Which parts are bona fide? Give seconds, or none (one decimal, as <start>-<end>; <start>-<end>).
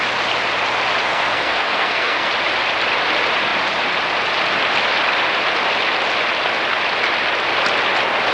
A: 0.0-1.0; 2.3-8.3